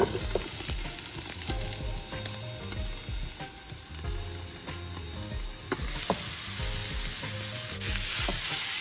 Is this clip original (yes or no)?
yes